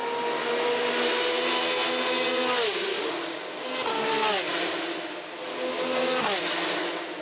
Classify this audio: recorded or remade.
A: recorded